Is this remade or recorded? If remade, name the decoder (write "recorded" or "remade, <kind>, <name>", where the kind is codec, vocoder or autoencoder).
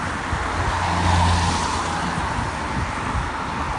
recorded